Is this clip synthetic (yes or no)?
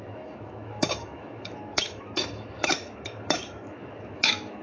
yes